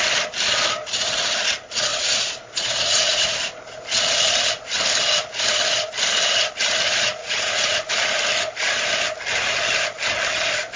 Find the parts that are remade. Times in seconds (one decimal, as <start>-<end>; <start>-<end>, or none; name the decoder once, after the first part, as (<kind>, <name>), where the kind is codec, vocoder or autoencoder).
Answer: 1.9-3.4 (vocoder, Vocos); 7.2-7.9